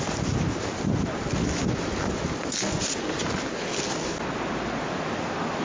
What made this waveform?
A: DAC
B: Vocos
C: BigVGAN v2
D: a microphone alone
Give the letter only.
D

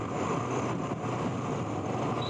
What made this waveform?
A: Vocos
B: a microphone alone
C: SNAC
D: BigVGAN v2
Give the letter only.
B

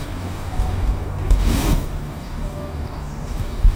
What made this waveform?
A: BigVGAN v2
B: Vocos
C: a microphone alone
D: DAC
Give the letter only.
D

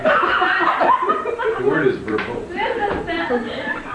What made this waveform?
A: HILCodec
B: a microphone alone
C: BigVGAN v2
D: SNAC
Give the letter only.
C